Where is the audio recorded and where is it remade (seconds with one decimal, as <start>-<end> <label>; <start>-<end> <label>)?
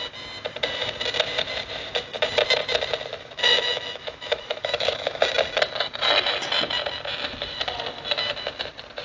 0.0-3.1 recorded; 3.1-5.2 remade; 5.2-9.0 recorded